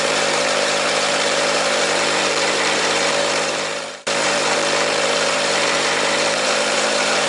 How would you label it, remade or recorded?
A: remade